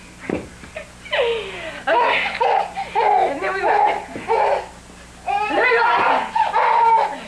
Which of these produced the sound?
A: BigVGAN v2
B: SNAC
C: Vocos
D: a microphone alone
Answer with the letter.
D